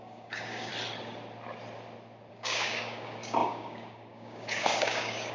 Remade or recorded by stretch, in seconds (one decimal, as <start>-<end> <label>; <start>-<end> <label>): 0.0-0.7 remade; 0.7-2.3 recorded; 2.3-5.3 remade

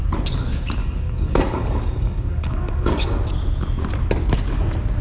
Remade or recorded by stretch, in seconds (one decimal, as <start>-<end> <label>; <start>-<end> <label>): 0.0-0.8 recorded; 0.8-3.2 remade; 3.2-5.0 recorded